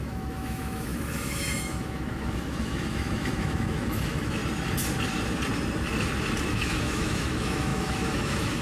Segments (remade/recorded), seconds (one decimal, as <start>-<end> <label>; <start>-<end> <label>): 0.0-4.4 remade; 4.4-6.4 recorded; 6.4-8.6 remade